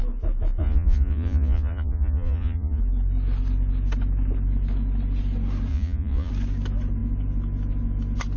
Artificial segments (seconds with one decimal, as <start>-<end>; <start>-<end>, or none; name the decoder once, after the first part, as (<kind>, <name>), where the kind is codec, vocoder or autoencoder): 0.6-2.8 (vocoder, Vocos); 5.7-6.3